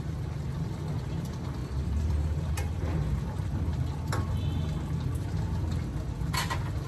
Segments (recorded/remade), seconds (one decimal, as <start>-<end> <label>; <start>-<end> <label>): 0.0-1.6 recorded; 1.6-2.5 remade; 2.5-6.9 recorded